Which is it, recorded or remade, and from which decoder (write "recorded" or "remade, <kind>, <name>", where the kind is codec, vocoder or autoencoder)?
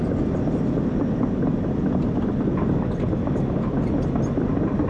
recorded